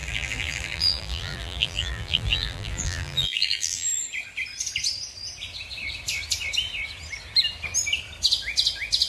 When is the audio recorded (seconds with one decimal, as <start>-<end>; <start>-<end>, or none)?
3.9-9.1